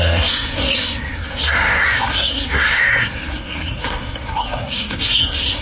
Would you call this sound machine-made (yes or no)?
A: yes